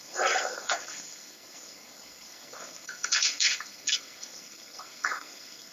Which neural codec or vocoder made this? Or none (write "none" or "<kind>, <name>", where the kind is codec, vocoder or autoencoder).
codec, SNAC